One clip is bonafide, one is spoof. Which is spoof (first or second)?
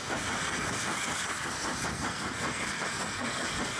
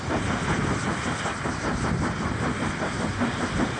first